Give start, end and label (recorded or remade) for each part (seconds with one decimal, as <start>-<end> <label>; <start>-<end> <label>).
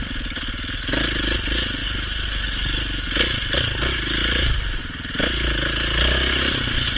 0.0-4.2 recorded; 4.2-4.8 remade; 4.8-7.0 recorded